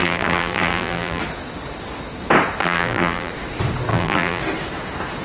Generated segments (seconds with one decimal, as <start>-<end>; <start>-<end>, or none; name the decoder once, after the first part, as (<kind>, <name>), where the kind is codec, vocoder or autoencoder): 0.0-1.2 (vocoder, BigVGAN v2); 2.6-3.3; 3.9-4.4